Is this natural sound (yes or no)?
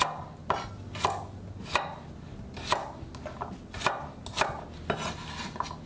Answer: yes